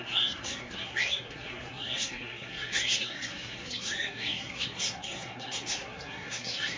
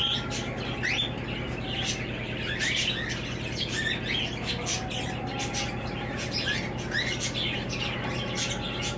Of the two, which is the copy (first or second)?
first